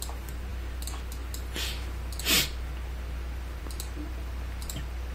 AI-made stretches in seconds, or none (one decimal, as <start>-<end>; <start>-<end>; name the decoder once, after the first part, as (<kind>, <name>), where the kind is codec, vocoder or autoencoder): none